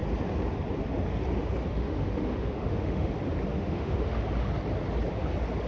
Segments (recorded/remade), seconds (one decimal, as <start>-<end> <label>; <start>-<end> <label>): 0.0-1.7 recorded; 1.7-3.1 remade; 3.1-3.5 recorded; 3.5-4.2 remade; 4.2-5.7 recorded